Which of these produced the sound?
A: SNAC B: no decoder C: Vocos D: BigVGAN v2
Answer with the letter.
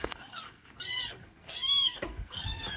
A